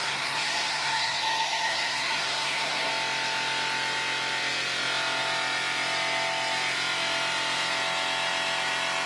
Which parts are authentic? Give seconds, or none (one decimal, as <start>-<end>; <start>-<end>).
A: 2.9-9.1